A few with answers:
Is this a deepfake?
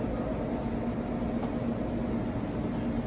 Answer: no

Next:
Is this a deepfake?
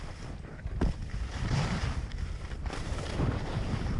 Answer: yes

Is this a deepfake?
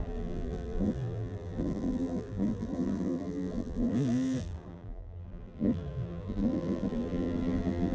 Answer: yes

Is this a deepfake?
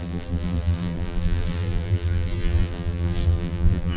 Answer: yes